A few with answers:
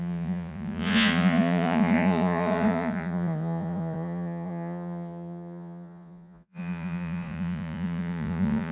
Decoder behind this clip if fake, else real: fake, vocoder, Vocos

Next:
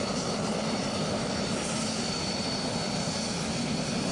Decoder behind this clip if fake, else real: real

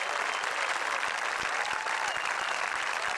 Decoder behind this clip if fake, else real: real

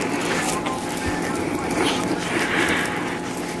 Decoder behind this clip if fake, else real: real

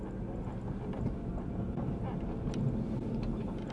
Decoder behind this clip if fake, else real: real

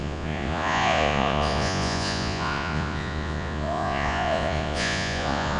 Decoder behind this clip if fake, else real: fake, vocoder, Vocos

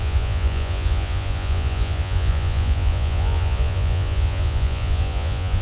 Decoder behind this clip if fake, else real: fake, vocoder, Vocos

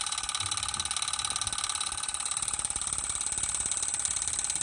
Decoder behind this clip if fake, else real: real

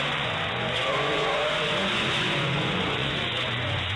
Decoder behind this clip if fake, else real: fake, vocoder, Vocos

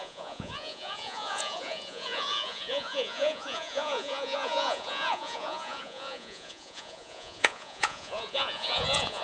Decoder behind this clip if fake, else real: fake, vocoder, Vocos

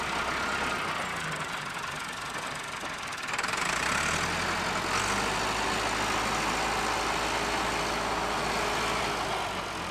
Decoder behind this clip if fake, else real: real